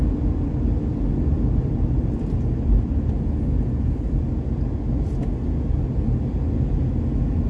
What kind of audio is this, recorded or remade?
recorded